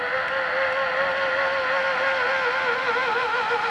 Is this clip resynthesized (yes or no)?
no